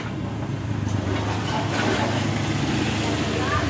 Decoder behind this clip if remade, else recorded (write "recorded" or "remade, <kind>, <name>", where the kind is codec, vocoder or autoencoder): recorded